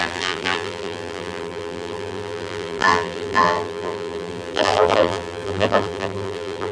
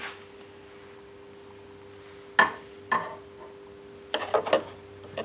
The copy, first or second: first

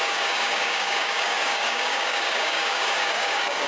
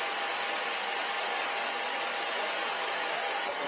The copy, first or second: first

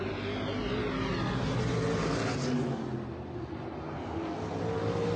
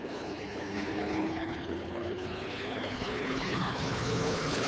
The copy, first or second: second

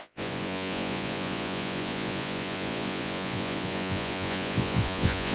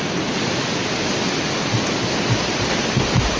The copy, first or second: first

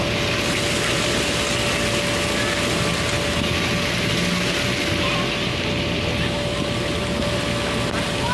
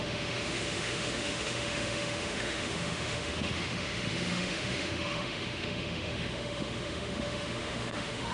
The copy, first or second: second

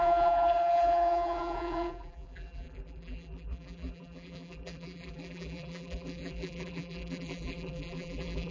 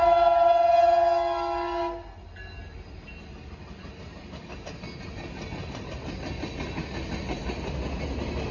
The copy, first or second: first